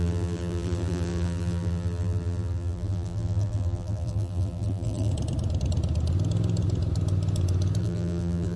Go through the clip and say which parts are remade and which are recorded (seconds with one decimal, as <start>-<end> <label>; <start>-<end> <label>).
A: 0.0-5.1 remade; 5.1-7.8 recorded; 7.8-8.6 remade